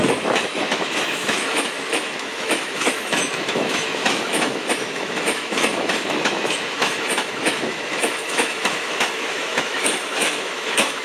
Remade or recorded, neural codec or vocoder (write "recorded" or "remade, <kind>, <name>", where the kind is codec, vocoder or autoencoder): remade, autoencoder, DAC-VAE